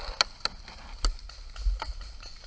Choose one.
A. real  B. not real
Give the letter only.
A